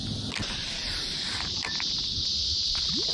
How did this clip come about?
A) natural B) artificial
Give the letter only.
A